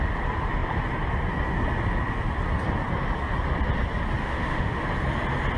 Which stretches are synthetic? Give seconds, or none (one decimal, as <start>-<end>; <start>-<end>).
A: 4.2-4.8